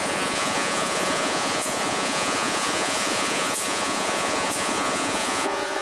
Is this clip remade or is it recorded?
remade